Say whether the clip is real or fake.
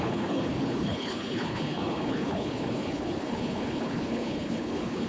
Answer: fake